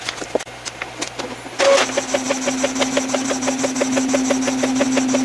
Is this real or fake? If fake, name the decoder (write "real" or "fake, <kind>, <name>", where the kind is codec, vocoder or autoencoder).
real